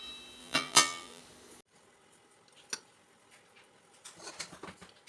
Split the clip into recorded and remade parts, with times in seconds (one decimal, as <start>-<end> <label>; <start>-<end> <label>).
0.0-0.4 recorded; 0.4-1.2 remade; 1.2-5.1 recorded